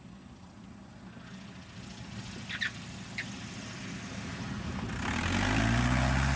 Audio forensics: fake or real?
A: real